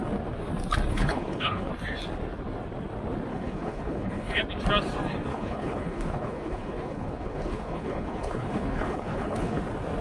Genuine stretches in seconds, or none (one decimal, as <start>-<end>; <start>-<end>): 0.0-0.9; 1.7-3.3; 4.4-5.3; 9.6-10.0